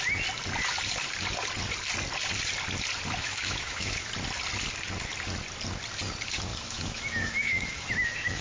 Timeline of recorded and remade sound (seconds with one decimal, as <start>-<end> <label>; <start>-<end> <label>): 0.0-3.2 recorded; 3.2-4.1 remade; 4.1-6.5 recorded; 6.5-8.4 remade